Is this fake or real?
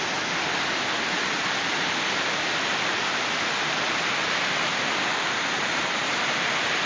real